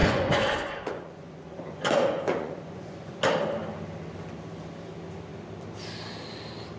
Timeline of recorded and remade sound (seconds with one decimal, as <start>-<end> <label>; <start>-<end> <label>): 0.0-3.2 remade; 3.2-6.8 recorded